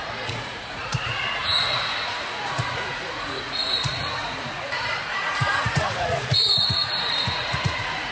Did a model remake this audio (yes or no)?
yes